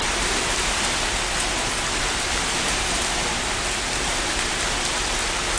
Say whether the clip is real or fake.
real